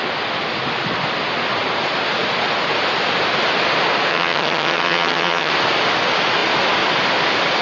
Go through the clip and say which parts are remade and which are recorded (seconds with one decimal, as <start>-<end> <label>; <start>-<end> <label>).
0.0-4.1 recorded; 4.1-5.5 remade; 5.5-7.6 recorded